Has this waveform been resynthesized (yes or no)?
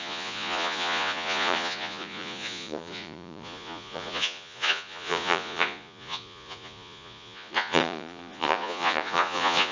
yes